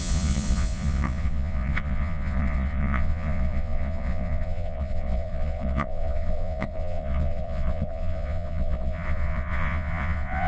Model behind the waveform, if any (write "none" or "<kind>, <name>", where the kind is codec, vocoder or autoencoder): vocoder, Vocos